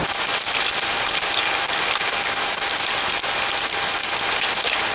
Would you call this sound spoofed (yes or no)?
no